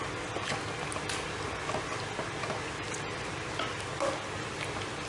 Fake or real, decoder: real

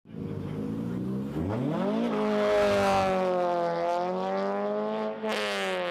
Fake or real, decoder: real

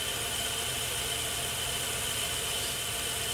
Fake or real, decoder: real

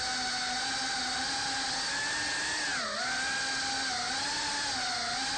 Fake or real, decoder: real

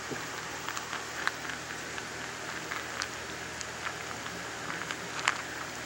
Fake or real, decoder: real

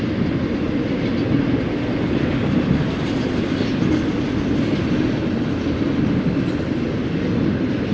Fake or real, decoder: real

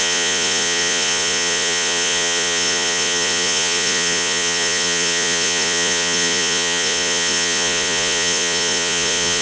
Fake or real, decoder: fake, vocoder, Vocos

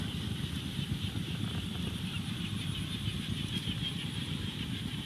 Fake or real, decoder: fake, vocoder, BigVGAN v2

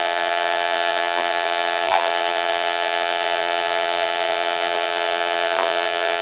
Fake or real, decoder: fake, vocoder, BigVGAN v2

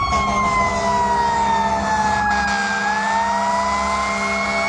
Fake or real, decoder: real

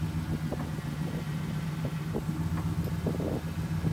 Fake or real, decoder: real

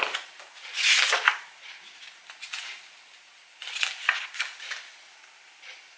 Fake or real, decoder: real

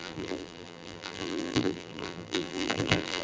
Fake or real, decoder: fake, vocoder, BigVGAN v2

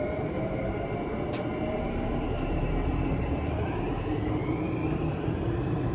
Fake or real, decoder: fake, vocoder, BigVGAN v2